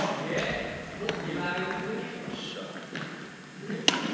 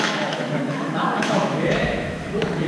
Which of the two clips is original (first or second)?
first